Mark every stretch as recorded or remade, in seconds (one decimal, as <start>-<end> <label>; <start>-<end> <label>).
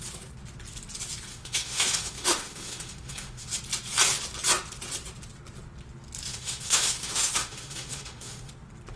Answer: 0.0-1.3 recorded; 1.3-3.5 remade; 3.5-6.3 recorded; 6.3-8.5 remade; 8.5-9.0 recorded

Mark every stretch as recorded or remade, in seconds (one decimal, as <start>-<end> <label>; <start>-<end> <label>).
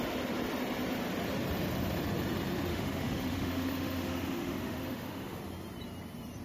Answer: 0.0-2.7 recorded; 2.7-5.4 remade; 5.4-6.4 recorded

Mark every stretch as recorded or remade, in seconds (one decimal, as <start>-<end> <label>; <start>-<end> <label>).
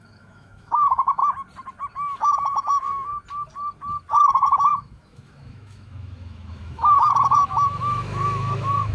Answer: 0.0-1.2 remade; 1.2-1.9 recorded; 1.9-3.1 remade; 3.1-4.1 recorded; 4.1-8.9 remade